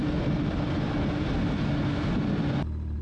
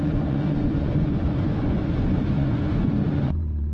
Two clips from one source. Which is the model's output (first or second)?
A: second